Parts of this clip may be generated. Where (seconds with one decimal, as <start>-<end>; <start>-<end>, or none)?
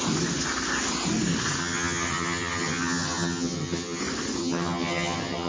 1.6-4.0; 4.4-5.5